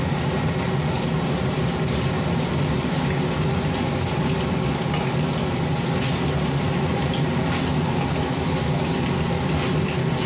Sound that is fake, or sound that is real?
real